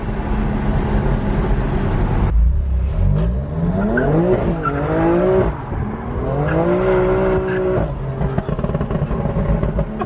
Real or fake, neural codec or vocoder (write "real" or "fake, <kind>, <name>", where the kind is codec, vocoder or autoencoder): real